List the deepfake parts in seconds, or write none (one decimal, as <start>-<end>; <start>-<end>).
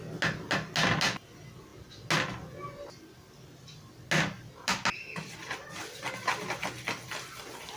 none